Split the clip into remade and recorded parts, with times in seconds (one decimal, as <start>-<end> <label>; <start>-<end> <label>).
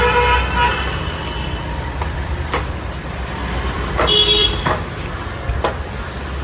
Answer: 0.0-0.7 recorded; 0.7-3.9 remade; 3.9-4.4 recorded; 4.4-5.7 remade; 5.7-6.4 recorded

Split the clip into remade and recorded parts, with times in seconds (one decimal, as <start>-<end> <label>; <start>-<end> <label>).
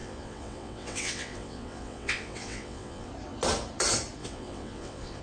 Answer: 0.0-3.1 remade; 3.1-4.2 recorded; 4.2-5.2 remade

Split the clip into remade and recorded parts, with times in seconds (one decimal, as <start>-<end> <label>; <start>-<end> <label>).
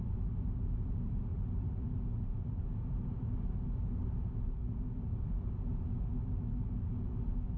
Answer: 0.0-7.6 remade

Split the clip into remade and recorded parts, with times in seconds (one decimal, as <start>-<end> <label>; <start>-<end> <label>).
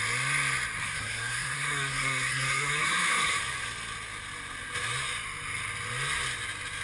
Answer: 0.0-0.8 recorded; 0.8-3.4 remade; 3.4-6.8 recorded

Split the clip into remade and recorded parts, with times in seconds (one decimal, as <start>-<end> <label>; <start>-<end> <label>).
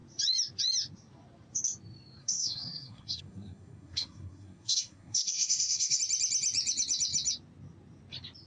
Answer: 0.0-2.2 recorded; 2.2-6.0 remade; 6.0-8.5 recorded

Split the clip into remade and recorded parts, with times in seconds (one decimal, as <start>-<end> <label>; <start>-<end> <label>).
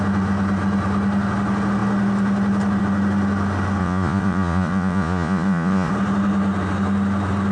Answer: 0.0-3.8 recorded; 3.8-5.9 remade; 5.9-7.5 recorded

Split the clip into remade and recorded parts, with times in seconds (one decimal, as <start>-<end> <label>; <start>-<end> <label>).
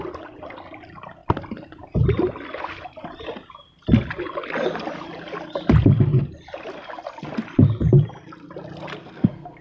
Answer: 0.0-9.0 recorded; 9.0-9.6 remade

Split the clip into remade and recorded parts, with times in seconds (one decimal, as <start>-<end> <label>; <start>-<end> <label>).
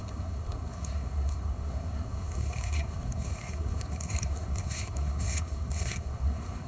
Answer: 0.0-6.7 remade